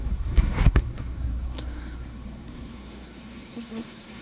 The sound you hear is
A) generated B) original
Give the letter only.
A